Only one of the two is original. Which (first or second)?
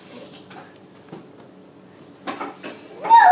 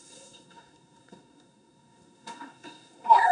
first